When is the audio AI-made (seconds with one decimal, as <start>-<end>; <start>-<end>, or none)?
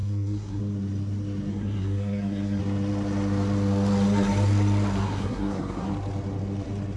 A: 0.0-0.6; 1.5-2.6; 5.0-5.9